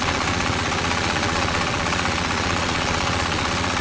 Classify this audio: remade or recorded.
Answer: remade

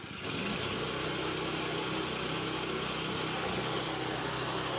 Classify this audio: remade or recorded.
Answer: recorded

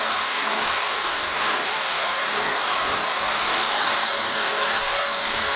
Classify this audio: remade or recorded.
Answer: remade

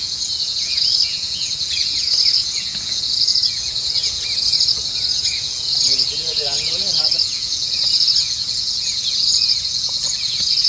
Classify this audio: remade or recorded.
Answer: remade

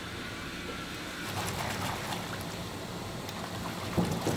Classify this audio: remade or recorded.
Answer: recorded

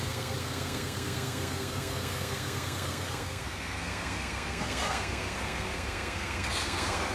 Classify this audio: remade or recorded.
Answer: remade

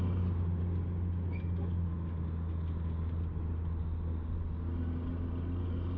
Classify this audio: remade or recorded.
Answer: recorded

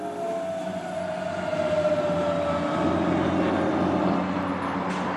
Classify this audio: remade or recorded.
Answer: recorded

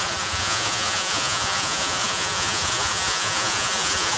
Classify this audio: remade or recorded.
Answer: remade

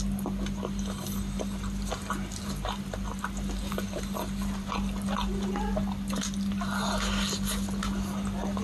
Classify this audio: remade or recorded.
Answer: recorded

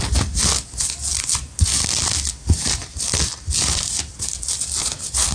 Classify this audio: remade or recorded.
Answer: recorded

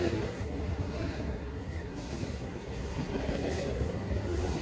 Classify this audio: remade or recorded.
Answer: remade